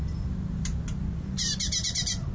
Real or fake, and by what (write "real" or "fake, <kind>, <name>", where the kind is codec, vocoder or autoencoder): real